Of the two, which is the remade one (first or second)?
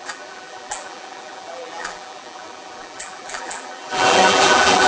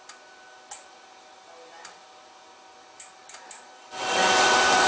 first